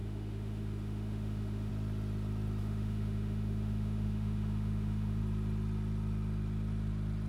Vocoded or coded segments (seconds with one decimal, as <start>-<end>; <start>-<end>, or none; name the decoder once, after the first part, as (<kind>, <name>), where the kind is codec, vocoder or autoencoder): 0.0-1.7 (autoencoder, DAC-VAE); 2.6-5.2